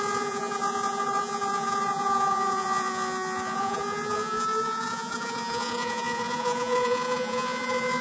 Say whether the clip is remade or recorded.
remade